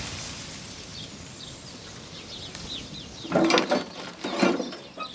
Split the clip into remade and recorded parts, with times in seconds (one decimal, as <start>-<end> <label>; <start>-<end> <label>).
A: 0.0-5.1 recorded